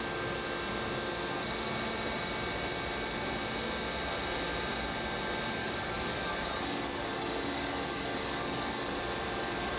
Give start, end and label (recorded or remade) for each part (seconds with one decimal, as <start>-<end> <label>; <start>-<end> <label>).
0.0-5.6 recorded; 5.6-9.0 remade; 9.0-9.8 recorded